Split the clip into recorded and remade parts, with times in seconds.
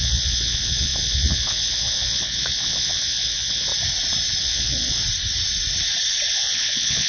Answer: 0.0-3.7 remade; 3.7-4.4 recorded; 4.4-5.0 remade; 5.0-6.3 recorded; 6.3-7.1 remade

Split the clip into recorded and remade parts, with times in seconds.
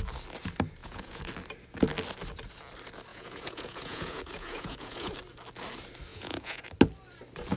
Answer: 0.0-0.8 recorded; 0.8-1.3 remade; 1.3-3.1 recorded; 3.1-5.1 remade; 5.1-6.1 recorded; 6.1-6.7 remade; 6.7-7.6 recorded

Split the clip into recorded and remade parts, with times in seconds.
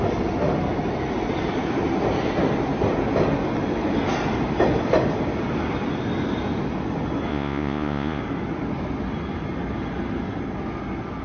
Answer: 0.0-7.3 recorded; 7.3-8.2 remade; 8.2-11.2 recorded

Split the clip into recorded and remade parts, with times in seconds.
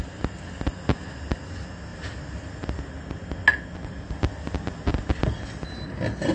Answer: 0.0-6.3 recorded